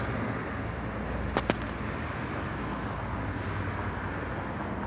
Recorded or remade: recorded